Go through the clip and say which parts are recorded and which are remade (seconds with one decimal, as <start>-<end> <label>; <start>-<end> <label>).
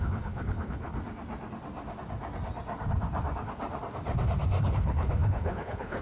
0.0-1.0 remade; 1.0-4.6 recorded; 4.6-6.0 remade